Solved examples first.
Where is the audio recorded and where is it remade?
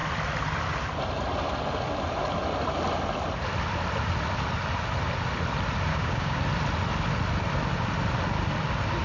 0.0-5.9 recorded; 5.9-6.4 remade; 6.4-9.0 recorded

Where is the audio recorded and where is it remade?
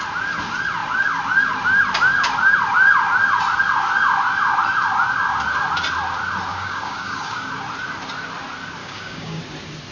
0.0-6.5 recorded; 6.5-7.5 remade; 7.5-8.8 recorded; 8.8-9.4 remade; 9.4-9.9 recorded